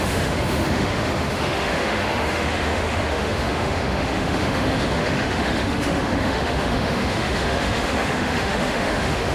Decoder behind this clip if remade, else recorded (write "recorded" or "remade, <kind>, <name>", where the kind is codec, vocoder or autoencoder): remade, autoencoder, DAC-VAE